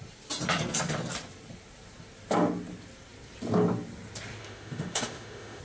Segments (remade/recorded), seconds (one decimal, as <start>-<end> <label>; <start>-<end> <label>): 0.0-4.4 recorded; 4.4-5.6 remade